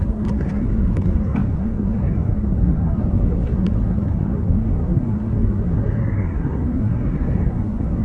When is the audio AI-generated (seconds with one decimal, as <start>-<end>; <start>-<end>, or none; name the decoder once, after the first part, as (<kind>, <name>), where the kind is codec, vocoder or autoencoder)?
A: 0.0-8.0 (codec, SNAC)